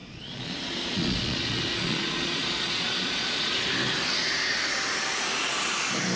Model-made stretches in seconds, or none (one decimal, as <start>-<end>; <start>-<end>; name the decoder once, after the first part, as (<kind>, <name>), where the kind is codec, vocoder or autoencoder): 0.0-3.7 (vocoder, Vocos)